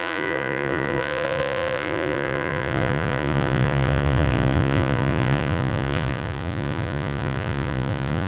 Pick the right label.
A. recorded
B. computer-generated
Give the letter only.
B